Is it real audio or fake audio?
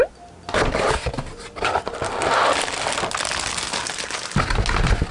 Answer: real